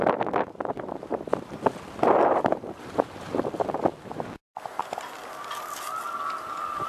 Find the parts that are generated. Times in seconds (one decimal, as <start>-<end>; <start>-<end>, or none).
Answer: none